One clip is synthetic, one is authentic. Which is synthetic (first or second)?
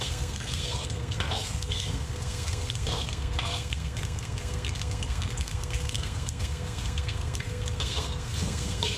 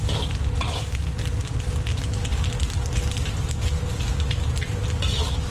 first